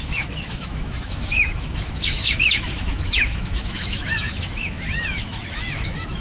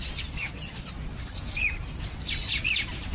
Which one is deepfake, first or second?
first